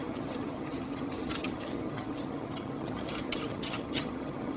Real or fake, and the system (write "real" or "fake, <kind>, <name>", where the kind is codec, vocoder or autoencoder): fake, vocoder, HiFi-GAN